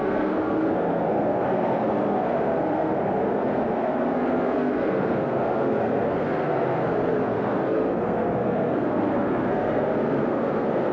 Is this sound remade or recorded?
remade